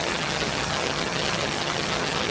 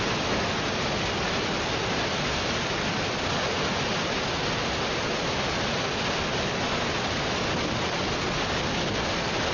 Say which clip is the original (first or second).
second